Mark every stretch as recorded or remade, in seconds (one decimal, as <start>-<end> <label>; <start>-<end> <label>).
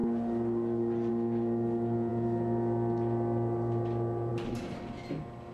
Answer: 0.0-5.5 recorded